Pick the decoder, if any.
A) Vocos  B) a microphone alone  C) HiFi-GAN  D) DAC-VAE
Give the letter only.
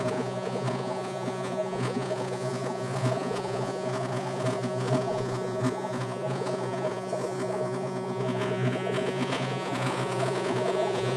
A